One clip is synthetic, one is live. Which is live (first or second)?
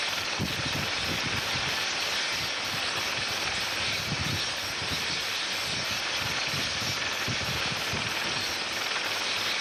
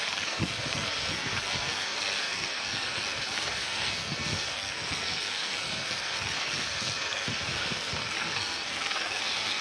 first